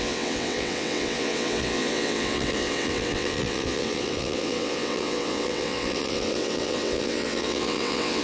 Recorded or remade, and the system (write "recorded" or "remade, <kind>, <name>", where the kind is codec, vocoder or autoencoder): remade, vocoder, WaveNeXt